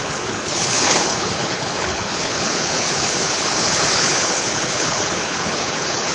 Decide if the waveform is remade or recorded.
remade